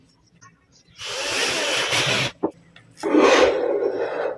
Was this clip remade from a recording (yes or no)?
no